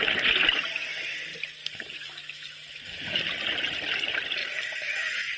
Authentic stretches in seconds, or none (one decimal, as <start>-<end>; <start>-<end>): 0.0-1.6; 3.2-4.4